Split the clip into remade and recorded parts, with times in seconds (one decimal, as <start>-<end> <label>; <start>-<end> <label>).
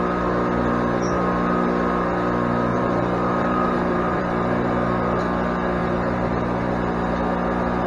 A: 0.0-2.7 recorded; 2.7-5.2 remade; 5.2-5.8 recorded; 5.8-6.7 remade; 6.7-7.9 recorded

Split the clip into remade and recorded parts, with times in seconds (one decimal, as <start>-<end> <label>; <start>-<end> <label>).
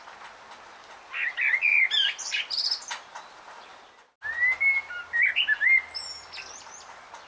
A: 0.0-7.3 recorded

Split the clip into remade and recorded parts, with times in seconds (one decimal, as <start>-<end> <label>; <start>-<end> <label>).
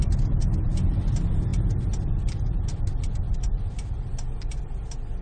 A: 0.0-5.2 recorded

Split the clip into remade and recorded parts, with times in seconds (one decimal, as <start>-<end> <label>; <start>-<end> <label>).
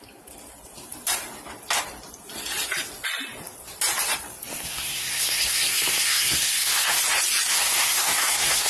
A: 0.0-4.5 recorded; 4.5-7.0 remade; 7.0-7.5 recorded; 7.5-8.7 remade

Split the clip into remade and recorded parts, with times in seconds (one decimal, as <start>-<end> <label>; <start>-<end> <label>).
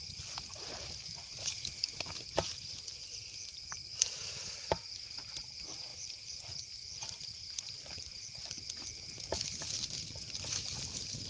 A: 0.0-3.5 recorded; 3.5-4.1 remade; 4.1-11.3 recorded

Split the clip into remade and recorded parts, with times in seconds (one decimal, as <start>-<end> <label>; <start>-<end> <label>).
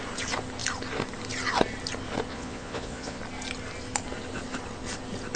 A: 0.0-2.3 recorded; 2.3-3.2 remade; 3.2-5.4 recorded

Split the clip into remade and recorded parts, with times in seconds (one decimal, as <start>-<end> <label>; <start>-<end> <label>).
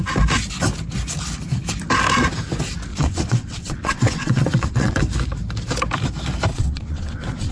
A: 0.0-2.9 recorded; 2.9-5.0 remade; 5.0-6.5 recorded; 6.5-7.5 remade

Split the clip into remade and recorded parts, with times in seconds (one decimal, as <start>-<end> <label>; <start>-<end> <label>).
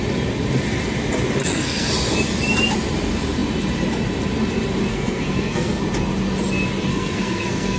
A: 0.0-1.4 recorded; 1.4-1.9 remade; 1.9-4.9 recorded; 4.9-5.8 remade; 5.8-6.9 recorded; 6.9-7.8 remade